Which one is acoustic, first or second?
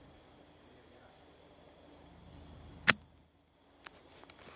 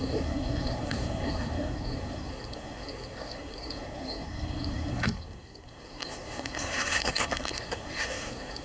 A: first